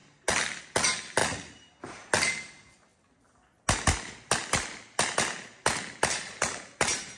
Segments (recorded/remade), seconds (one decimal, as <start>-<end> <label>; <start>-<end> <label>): 0.0-7.2 recorded